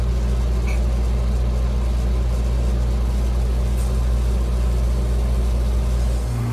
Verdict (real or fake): real